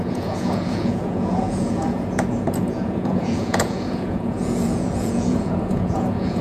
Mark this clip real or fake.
fake